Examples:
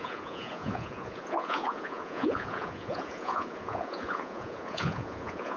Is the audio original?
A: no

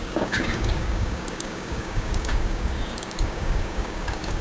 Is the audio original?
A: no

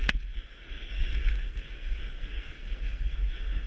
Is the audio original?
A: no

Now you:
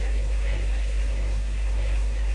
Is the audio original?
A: no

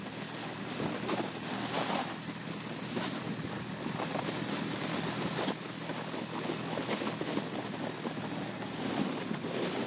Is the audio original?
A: yes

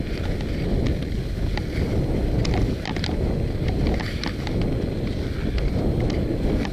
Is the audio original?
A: yes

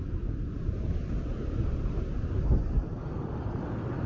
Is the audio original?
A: yes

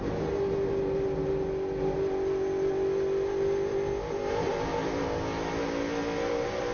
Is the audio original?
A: yes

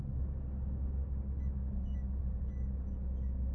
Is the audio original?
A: yes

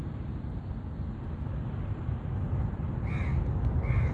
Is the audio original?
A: yes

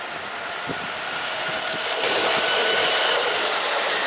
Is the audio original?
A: yes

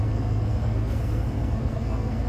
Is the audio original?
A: no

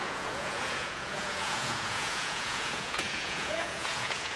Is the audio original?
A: no